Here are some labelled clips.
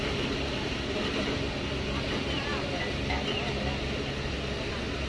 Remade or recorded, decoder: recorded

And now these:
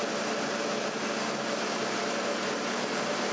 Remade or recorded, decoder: recorded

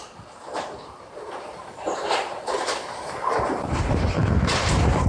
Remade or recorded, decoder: remade, vocoder, BigVGAN v2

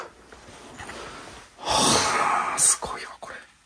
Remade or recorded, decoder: recorded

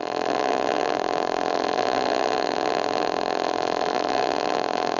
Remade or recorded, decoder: remade, vocoder, BigVGAN v2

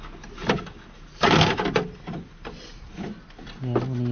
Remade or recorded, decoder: recorded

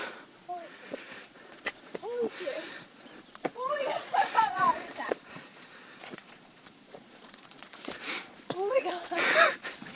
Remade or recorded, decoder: remade, vocoder, Vocos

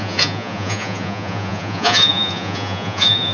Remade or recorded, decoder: remade, vocoder, Vocos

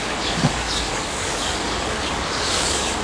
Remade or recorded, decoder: remade, codec, DAC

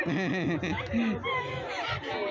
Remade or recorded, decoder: recorded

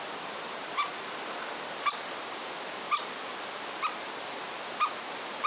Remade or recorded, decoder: recorded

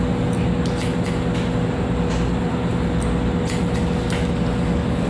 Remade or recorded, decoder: recorded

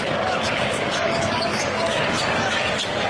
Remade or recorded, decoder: remade, codec, DAC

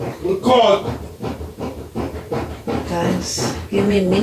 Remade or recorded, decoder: remade, vocoder, BigVGAN v2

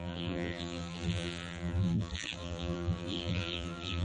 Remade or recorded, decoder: remade, vocoder, BigVGAN v2